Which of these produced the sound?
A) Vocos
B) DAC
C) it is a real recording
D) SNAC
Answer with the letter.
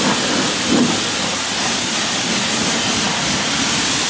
C